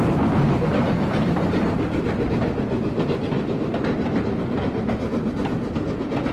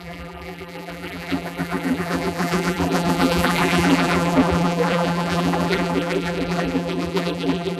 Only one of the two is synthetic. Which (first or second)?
second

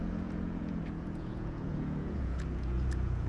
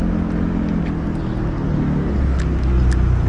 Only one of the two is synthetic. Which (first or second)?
first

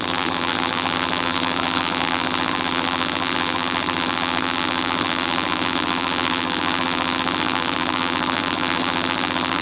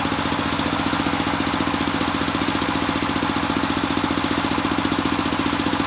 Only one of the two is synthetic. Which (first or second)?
first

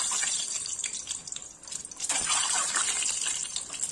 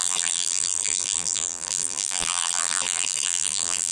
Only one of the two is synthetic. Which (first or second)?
second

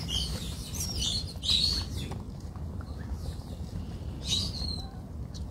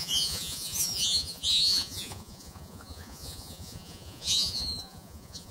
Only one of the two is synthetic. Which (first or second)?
second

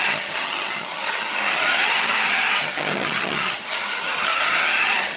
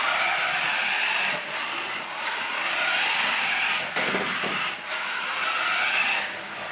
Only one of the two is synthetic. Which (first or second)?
first